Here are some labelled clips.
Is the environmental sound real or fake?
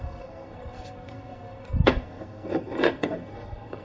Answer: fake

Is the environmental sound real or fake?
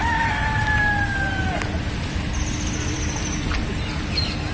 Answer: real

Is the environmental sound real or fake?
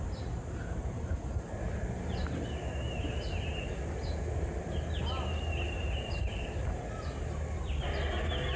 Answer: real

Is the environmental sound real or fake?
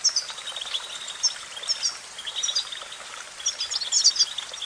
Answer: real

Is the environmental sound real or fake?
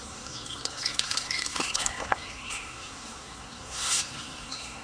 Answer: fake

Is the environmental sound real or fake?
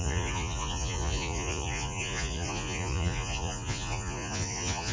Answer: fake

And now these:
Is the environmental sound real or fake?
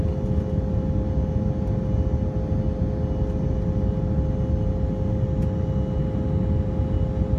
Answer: real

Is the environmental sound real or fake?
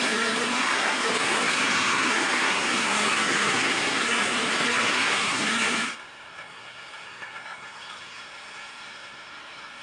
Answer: fake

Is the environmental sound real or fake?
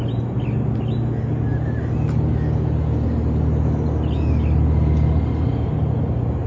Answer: real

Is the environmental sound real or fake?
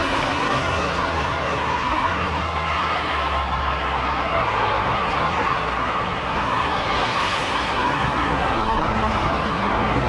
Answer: fake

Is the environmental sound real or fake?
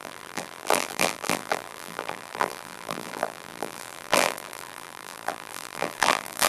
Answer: fake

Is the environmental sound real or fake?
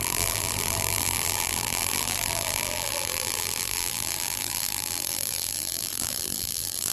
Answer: fake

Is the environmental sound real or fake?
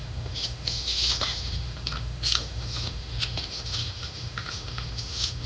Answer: fake